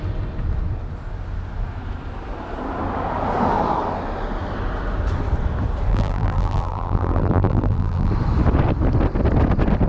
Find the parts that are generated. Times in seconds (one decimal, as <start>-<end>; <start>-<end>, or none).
5.9-8.1